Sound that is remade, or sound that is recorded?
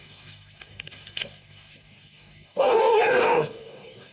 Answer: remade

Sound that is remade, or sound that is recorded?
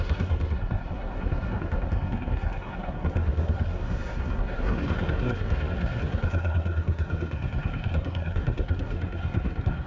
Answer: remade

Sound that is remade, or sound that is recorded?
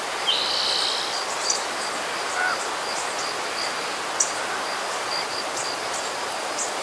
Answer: recorded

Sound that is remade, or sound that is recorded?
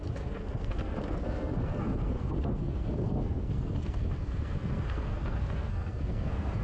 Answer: remade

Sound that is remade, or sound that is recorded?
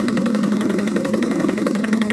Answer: remade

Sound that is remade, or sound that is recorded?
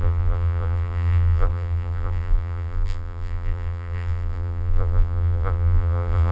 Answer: remade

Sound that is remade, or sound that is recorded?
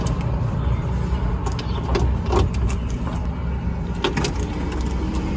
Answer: recorded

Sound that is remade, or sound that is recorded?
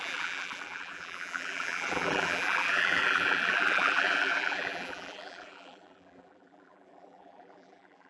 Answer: remade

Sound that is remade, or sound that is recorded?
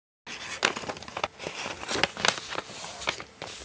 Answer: recorded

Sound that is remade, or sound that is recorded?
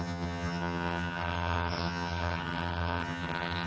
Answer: remade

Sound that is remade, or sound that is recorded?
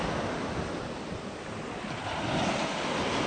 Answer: recorded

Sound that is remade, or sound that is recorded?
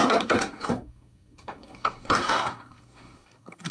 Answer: remade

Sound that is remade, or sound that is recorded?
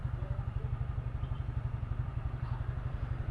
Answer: remade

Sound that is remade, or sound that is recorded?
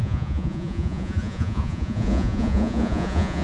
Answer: remade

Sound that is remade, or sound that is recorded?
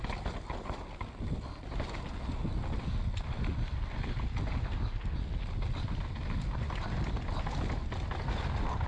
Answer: recorded